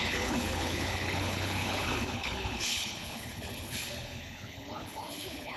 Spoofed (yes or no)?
yes